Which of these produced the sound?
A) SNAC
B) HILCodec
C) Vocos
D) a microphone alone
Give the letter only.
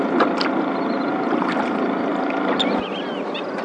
D